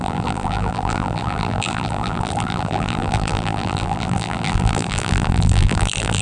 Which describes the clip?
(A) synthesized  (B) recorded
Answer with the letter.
A